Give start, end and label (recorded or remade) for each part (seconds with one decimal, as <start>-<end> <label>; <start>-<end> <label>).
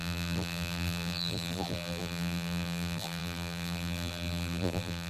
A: 0.0-5.1 remade